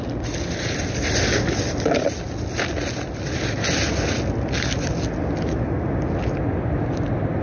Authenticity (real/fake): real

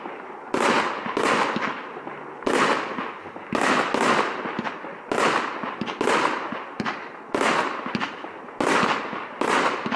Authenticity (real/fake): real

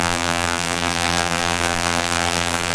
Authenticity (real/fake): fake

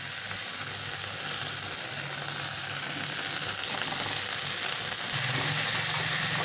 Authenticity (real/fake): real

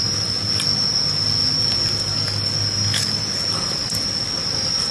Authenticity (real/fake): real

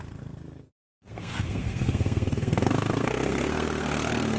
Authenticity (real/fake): fake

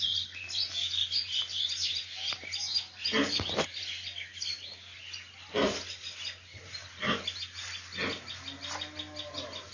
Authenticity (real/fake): real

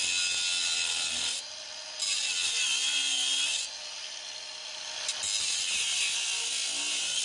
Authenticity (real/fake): real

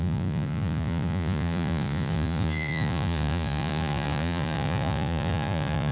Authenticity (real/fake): fake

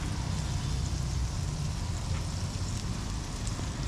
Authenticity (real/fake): real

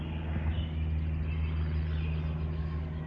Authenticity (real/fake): real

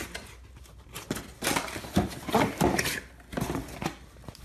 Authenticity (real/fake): real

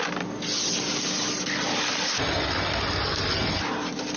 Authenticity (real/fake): real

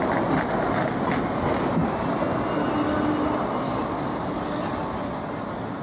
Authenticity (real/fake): real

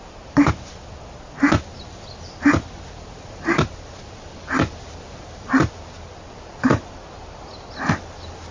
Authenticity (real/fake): real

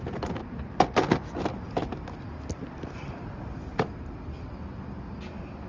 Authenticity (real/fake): real